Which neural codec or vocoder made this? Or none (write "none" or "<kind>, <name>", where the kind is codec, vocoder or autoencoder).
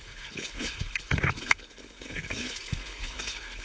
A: codec, HILCodec